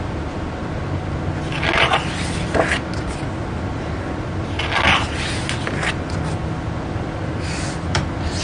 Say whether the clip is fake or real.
real